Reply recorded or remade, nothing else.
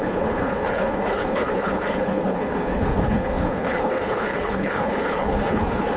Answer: remade